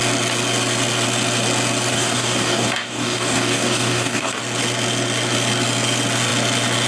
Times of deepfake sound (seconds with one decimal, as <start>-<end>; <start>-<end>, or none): 1.9-4.4